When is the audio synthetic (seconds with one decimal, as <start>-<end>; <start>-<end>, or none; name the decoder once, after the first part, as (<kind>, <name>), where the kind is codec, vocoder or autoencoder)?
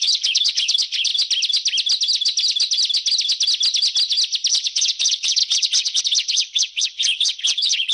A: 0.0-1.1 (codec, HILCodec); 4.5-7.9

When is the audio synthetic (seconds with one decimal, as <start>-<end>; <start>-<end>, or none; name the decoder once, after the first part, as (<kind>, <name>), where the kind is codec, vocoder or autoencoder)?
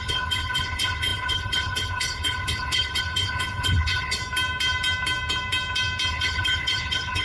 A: 0.0-4.2 (codec, HILCodec); 6.1-7.2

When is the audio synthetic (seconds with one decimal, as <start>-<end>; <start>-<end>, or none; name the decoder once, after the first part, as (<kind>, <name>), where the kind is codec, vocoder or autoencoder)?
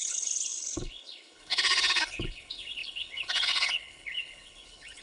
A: 0.0-5.0 (codec, HILCodec)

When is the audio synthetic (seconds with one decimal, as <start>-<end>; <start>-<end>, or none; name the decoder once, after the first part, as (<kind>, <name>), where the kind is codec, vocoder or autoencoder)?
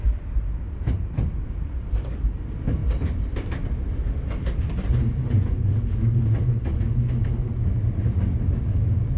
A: none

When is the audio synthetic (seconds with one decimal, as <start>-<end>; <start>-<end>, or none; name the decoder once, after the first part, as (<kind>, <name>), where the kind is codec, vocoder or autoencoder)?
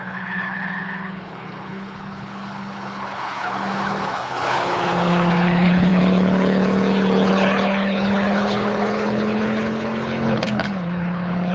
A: 0.0-11.5 (codec, HILCodec)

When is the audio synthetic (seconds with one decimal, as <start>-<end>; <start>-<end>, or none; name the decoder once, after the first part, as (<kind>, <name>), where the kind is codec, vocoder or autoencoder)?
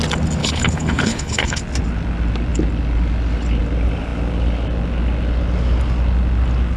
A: 0.4-1.6 (codec, HILCodec)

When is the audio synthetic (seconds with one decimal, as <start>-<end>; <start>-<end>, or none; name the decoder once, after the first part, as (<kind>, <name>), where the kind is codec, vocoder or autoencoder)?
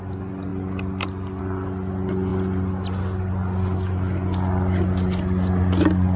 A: none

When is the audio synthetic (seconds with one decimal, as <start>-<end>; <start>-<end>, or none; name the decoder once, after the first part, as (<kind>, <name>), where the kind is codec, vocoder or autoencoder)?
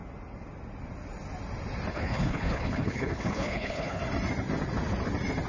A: 1.9-4.0 (codec, HILCodec)